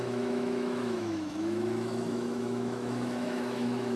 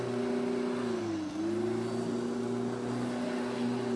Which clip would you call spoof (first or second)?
first